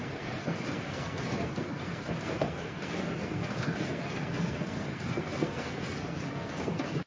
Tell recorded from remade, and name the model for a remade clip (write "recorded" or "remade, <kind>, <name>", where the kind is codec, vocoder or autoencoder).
remade, codec, SNAC